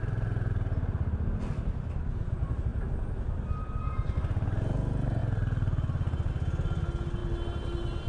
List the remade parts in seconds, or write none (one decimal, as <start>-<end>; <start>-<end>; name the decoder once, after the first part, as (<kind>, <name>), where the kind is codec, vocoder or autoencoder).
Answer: 2.7-3.8 (vocoder, BigVGAN v2); 7.2-8.1